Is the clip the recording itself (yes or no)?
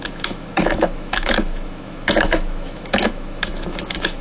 no